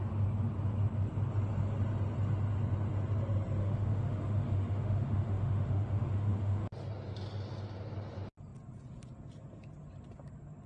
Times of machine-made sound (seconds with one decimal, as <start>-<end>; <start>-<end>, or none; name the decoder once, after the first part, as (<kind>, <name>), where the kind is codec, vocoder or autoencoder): 3.6-6.7 (autoencoder, DAC-VAE)